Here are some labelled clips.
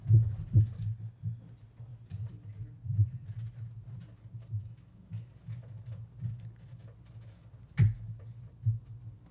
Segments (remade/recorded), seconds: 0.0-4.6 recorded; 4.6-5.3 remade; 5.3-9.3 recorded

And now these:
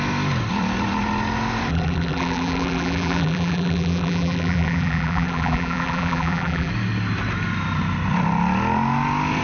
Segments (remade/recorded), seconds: 0.0-1.7 recorded; 1.7-6.7 remade; 6.7-9.4 recorded

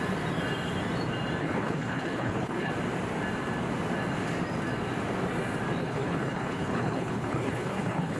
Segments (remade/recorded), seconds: 0.0-1.4 recorded; 1.4-2.7 remade; 2.7-5.8 recorded; 5.8-8.2 remade

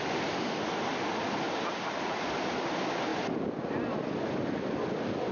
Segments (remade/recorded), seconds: 0.0-5.3 recorded

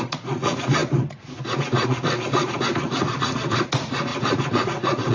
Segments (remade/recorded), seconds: 0.0-5.1 remade

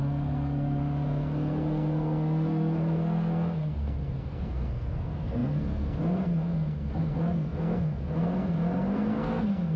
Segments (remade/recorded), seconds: 0.0-9.8 remade

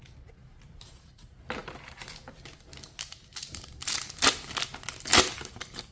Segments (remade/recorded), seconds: 0.0-5.9 recorded

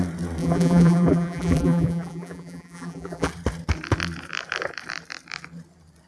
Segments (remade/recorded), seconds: 0.0-0.4 recorded; 0.4-3.3 remade; 3.3-6.1 recorded